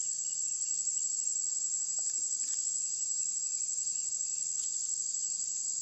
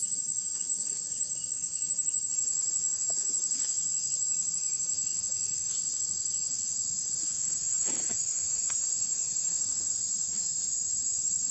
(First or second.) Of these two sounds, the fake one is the second